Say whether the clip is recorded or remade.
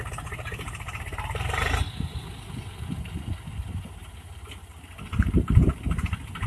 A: recorded